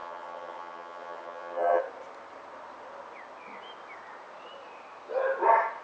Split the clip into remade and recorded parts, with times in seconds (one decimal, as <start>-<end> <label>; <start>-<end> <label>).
0.0-1.8 remade; 1.8-5.8 recorded